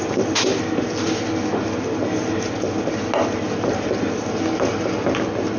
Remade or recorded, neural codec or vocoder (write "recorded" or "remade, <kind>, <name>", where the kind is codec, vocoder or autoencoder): recorded